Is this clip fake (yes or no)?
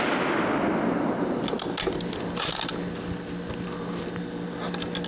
no